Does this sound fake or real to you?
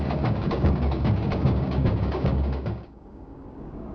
fake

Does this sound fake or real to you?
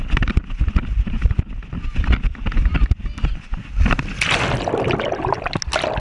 real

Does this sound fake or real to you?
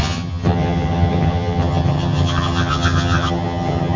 fake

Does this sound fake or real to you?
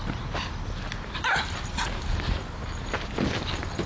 real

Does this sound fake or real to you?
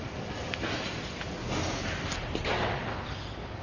real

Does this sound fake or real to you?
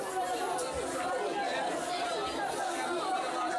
real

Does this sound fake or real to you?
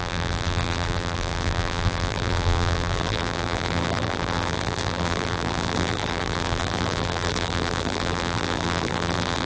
fake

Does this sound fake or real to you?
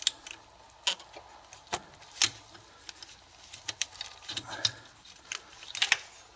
real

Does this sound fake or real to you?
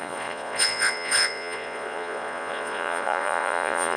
fake